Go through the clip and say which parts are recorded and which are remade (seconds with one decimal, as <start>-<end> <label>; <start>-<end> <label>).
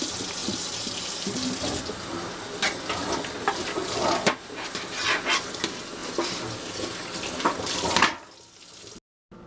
0.0-9.5 recorded